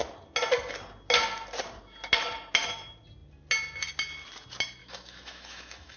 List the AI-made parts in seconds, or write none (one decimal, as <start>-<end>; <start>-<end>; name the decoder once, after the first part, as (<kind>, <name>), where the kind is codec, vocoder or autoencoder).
4.8-6.0 (autoencoder, DAC-VAE)